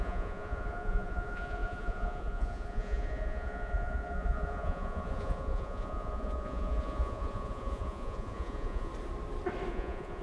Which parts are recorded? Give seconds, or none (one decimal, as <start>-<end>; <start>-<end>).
8.9-9.7